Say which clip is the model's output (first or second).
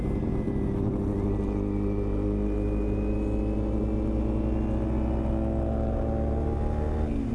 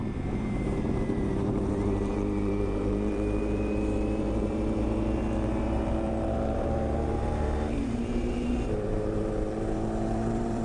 second